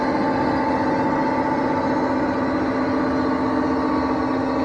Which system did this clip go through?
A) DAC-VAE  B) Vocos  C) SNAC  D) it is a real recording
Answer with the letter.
D